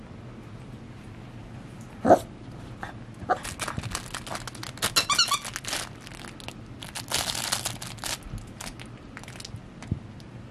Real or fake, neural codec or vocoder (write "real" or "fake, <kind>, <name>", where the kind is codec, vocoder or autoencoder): real